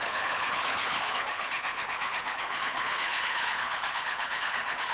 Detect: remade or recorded remade